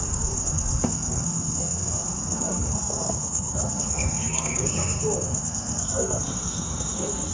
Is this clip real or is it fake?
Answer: fake